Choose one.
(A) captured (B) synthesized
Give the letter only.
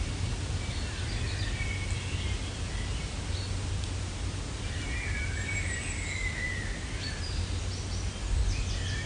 A